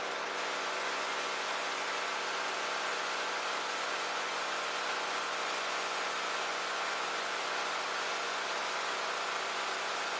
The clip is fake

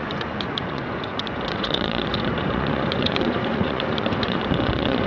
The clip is fake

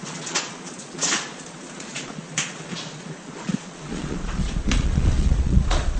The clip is fake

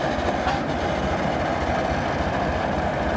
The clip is real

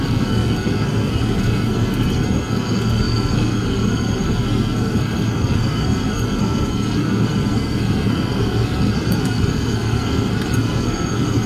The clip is fake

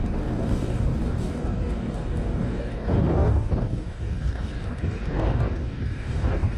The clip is fake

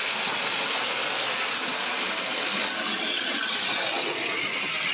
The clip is real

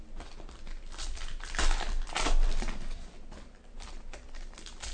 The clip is real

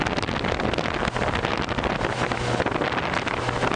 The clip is real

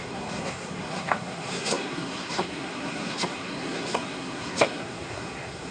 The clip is fake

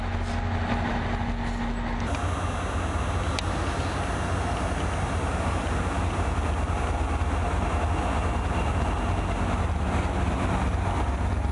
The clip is real